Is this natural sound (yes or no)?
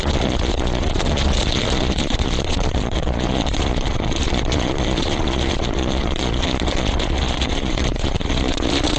no